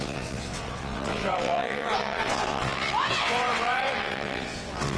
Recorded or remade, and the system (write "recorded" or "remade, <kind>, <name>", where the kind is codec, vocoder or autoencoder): remade, vocoder, WaveNeXt